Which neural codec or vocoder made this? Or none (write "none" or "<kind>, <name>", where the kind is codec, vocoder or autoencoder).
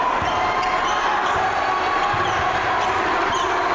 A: none